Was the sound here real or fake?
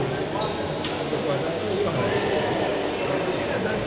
real